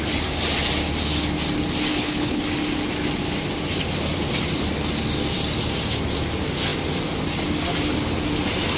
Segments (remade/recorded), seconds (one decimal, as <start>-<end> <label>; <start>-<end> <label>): 0.0-1.9 recorded; 1.9-2.4 remade; 2.4-8.8 recorded